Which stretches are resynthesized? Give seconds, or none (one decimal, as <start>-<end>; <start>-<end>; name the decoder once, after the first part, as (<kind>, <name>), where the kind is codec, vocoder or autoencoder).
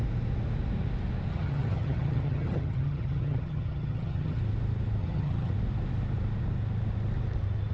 1.3-4.4 (vocoder, HiFi-GAN); 5.0-5.5